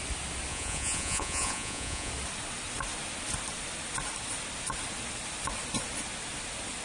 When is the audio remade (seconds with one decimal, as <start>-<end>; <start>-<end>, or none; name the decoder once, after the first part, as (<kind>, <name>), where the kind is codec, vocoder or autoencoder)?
0.5-2.1 (vocoder, Vocos)